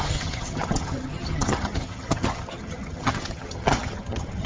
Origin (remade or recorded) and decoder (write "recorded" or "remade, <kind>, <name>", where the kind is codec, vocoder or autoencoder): remade, vocoder, HiFi-GAN